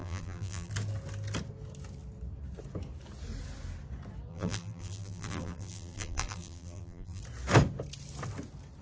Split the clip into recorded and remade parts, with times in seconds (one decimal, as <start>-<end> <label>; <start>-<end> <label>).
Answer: 0.0-0.7 remade; 0.7-4.3 recorded; 4.3-7.2 remade; 7.2-8.8 recorded